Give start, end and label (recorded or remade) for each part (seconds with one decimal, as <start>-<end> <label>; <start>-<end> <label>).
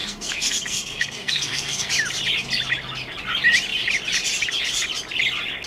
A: 0.0-1.9 remade; 1.9-5.7 recorded